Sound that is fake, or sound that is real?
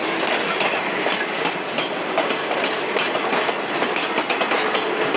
real